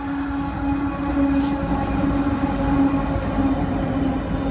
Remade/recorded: recorded